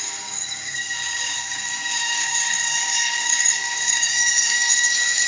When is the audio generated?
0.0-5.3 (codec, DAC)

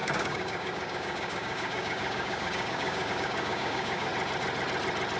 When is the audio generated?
0.0-4.1 (codec, DAC)

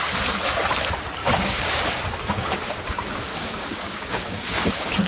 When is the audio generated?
1.2-1.8 (codec, DAC); 2.4-5.1

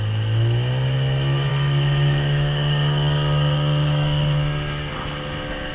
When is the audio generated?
1.5-4.9 (codec, DAC)